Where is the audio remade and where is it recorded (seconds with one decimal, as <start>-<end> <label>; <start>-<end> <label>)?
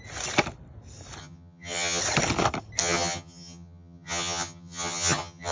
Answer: 0.0-1.2 recorded; 1.2-2.0 remade; 2.0-2.8 recorded; 2.8-5.5 remade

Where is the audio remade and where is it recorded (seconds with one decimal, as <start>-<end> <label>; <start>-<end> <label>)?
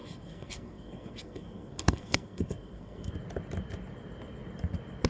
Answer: 0.0-3.1 remade; 3.1-5.1 recorded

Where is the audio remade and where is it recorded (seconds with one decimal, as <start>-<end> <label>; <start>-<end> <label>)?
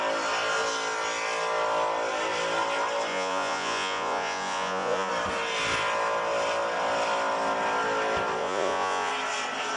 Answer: 0.0-3.1 recorded; 3.1-5.1 remade; 5.1-8.4 recorded; 8.4-9.1 remade; 9.1-9.8 recorded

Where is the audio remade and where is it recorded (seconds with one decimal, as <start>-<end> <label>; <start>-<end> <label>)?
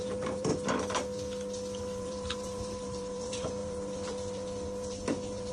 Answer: 0.0-0.5 remade; 0.5-1.8 recorded; 1.8-5.5 remade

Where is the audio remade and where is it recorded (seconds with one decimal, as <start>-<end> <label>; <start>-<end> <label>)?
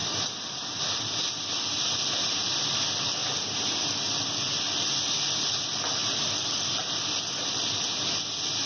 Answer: 0.0-0.8 remade; 0.8-3.2 recorded; 3.2-5.5 remade; 5.5-6.0 recorded; 6.0-7.6 remade; 7.6-8.7 recorded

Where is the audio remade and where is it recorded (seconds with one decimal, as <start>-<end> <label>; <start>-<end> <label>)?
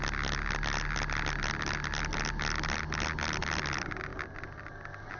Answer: 0.0-5.2 recorded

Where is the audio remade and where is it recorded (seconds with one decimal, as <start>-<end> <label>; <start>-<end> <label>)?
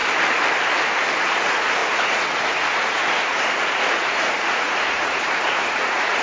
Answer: 0.0-1.2 recorded; 1.2-6.2 remade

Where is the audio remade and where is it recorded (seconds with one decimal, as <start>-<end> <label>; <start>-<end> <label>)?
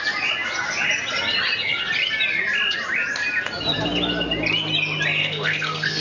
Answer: 0.0-5.2 recorded; 5.2-6.0 remade